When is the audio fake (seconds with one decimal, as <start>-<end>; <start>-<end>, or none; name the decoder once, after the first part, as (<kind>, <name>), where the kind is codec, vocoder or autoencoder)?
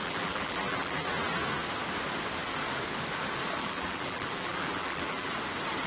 0.0-1.1 (vocoder, BigVGAN v2); 3.6-5.3